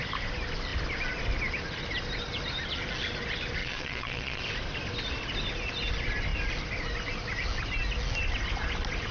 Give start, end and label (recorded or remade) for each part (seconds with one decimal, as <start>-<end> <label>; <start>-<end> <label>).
0.0-3.6 recorded; 3.6-4.4 remade; 4.4-9.1 recorded